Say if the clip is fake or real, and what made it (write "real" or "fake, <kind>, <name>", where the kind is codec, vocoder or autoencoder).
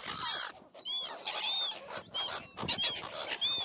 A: real